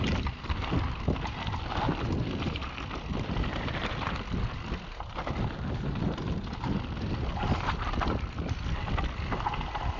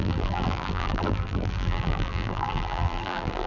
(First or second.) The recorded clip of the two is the first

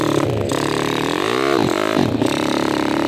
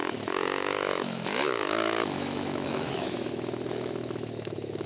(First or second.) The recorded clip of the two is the first